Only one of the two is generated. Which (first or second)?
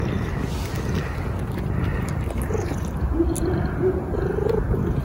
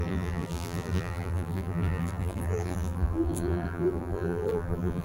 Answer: second